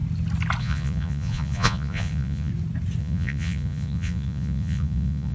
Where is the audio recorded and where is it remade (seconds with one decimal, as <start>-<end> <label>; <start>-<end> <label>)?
0.0-0.6 recorded; 0.6-2.5 remade; 2.5-3.0 recorded; 3.0-5.3 remade